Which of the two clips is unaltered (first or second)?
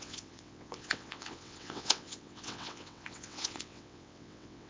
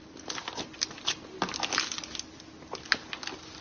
second